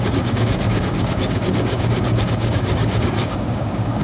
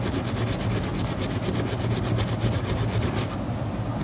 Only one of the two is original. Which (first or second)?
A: second